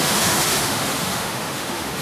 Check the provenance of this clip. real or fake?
fake